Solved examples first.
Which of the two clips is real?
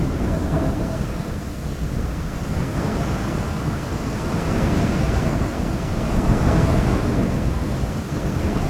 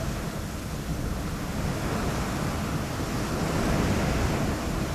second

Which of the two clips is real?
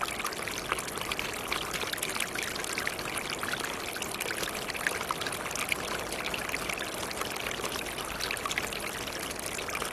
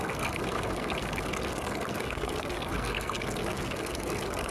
first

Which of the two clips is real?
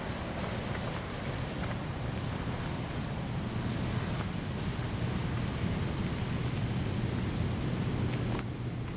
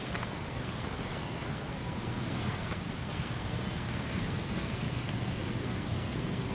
first